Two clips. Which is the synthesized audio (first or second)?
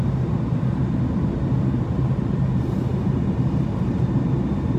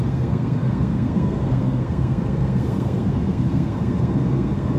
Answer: second